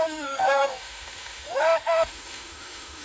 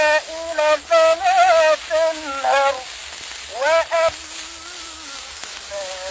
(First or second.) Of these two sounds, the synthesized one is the first